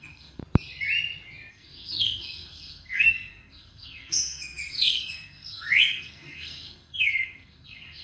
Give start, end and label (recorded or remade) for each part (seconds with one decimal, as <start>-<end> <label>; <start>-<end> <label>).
0.0-0.4 remade; 0.4-1.5 recorded; 1.5-8.0 remade